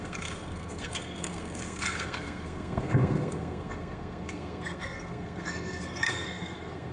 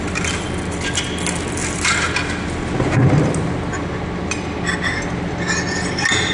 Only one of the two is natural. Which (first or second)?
second